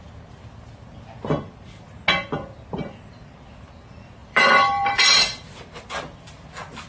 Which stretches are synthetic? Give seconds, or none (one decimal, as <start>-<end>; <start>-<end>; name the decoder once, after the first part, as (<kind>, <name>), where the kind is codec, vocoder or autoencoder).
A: 4.2-5.1 (vocoder, BigVGAN v2)